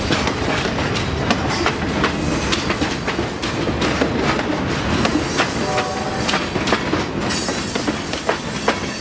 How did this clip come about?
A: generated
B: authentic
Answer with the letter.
B